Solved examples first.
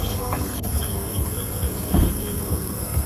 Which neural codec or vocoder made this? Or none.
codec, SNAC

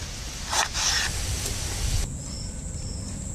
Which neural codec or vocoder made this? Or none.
vocoder, BigVGAN v2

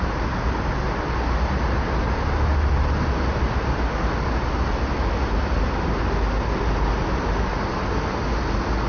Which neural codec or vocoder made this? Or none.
none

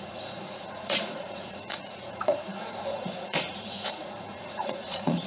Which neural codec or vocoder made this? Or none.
vocoder, Vocos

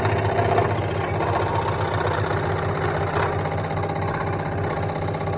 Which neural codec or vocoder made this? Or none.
none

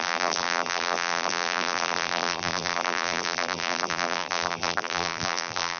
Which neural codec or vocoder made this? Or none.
vocoder, BigVGAN v2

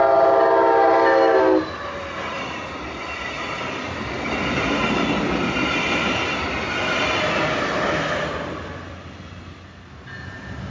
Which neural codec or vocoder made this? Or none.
none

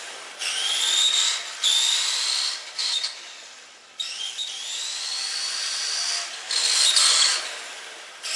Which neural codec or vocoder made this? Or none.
none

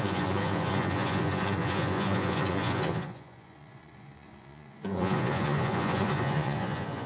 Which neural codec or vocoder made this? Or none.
vocoder, Vocos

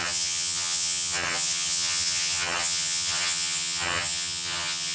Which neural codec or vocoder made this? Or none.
vocoder, HiFi-GAN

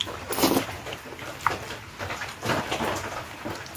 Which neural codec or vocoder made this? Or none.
none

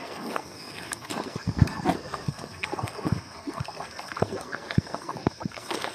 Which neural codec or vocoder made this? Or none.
codec, SNAC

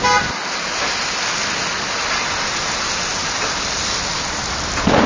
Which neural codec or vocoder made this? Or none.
none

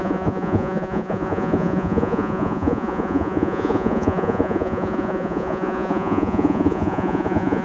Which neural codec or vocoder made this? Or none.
vocoder, Vocos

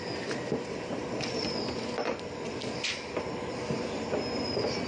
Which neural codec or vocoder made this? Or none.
none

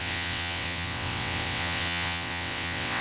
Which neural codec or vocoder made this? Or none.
vocoder, WaveNeXt